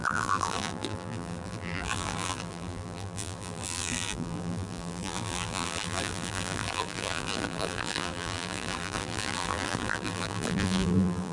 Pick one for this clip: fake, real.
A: fake